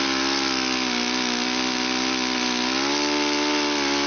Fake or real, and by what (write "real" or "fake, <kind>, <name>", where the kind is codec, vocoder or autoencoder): real